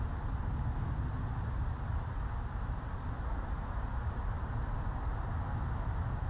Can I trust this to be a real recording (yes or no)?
yes